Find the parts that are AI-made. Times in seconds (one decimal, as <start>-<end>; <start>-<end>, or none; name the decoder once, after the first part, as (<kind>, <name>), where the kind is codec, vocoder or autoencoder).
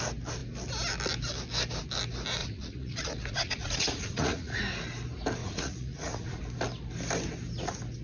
2.4-4.6 (vocoder, Vocos); 5.4-6.4